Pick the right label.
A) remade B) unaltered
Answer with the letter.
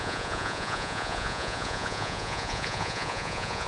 A